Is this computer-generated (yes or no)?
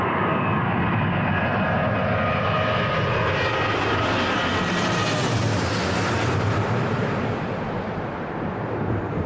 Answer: no